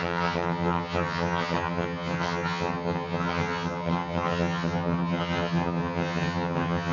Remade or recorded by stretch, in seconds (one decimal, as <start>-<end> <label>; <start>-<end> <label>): 0.0-6.9 remade